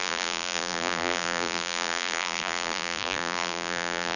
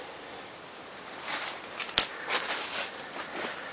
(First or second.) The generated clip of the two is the first